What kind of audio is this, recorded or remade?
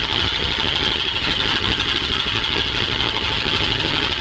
remade